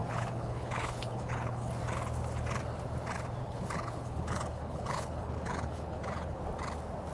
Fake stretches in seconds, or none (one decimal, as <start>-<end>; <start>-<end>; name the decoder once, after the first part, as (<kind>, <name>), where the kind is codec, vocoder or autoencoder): 0.0-1.7 (codec, HILCodec); 3.4-6.4